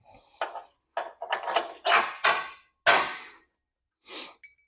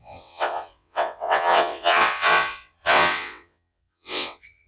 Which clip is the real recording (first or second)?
first